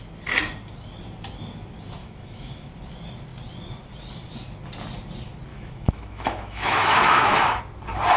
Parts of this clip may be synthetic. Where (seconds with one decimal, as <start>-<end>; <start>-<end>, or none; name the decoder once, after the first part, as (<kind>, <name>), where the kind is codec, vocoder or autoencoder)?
2.0-2.7 (autoencoder, DAC-VAE); 5.5-7.6